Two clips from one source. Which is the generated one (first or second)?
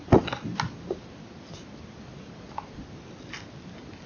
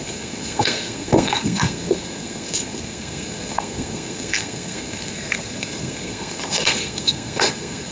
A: second